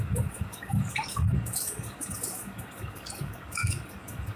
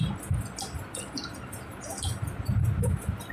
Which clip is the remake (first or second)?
first